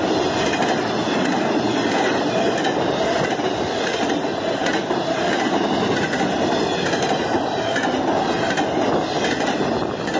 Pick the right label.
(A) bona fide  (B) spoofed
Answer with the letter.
A